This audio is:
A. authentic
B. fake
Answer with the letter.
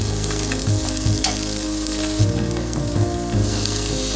B